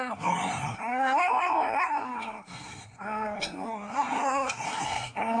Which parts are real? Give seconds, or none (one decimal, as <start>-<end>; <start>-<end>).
none